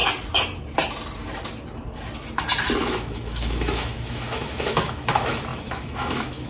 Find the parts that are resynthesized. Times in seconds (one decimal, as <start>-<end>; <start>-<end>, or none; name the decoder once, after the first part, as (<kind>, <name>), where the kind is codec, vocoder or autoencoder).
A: 2.8-6.5 (autoencoder, DAC-VAE)